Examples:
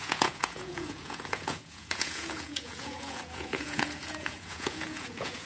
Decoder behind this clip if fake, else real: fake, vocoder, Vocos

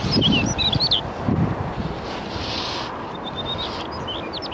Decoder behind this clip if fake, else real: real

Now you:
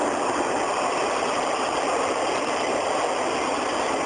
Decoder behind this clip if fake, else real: real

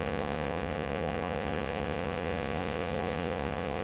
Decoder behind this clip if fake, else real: fake, vocoder, Vocos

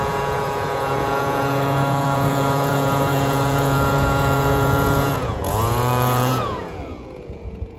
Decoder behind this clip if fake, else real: fake, vocoder, Vocos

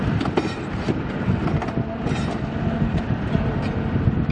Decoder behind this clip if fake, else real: real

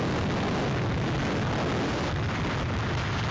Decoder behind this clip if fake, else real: real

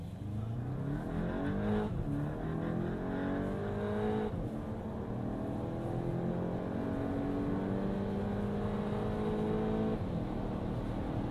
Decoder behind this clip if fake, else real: real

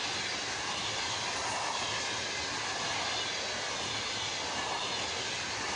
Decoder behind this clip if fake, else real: real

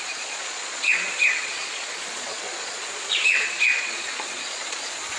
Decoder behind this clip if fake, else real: fake, vocoder, Vocos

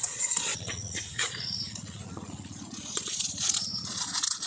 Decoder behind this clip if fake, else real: fake, vocoder, Vocos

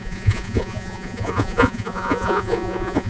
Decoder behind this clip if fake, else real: fake, vocoder, Vocos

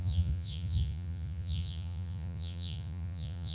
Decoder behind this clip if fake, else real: fake, vocoder, Vocos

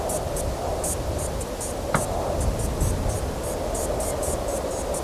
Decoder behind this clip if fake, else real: real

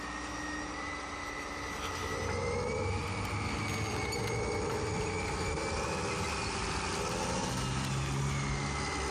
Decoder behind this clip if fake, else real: real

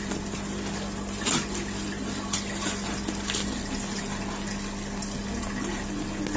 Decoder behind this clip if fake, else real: real